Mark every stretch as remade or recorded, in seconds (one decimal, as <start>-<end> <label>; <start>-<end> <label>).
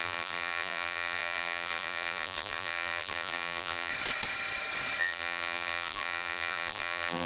0.0-3.9 remade; 3.9-5.0 recorded; 5.0-7.3 remade